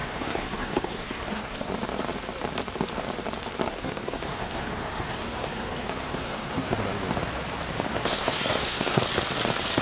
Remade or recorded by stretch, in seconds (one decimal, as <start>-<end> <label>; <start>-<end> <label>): 0.0-1.7 remade; 1.7-3.7 recorded; 3.7-6.7 remade; 6.7-7.9 recorded; 7.9-9.0 remade; 9.0-9.8 recorded